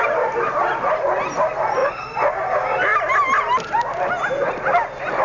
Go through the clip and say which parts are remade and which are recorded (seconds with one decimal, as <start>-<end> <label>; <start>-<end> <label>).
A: 0.0-5.2 recorded